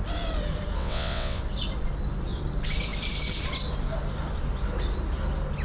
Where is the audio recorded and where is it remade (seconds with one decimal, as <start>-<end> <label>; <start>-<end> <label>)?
0.0-0.8 recorded; 0.8-1.4 remade; 1.4-5.6 recorded